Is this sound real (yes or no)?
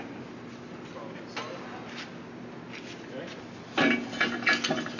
yes